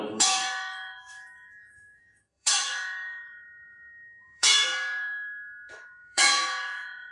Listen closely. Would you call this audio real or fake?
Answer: fake